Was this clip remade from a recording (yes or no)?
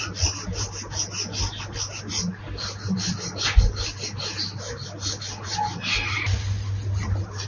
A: no